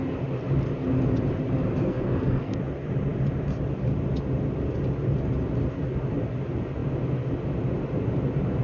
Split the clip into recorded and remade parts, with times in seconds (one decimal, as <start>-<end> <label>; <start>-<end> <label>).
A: 0.0-1.8 recorded; 1.8-2.6 remade; 2.6-8.6 recorded